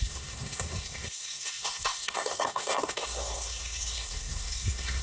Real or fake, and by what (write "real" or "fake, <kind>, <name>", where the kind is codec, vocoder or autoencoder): fake, codec, SNAC